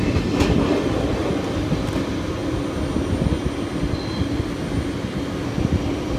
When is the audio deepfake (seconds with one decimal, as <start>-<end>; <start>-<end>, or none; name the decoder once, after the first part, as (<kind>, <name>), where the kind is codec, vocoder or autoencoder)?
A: none